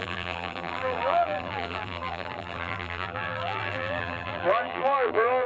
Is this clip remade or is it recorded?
remade